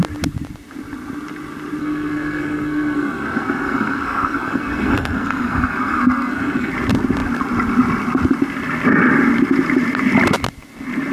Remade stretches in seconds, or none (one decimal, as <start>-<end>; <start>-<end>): 1.8-6.7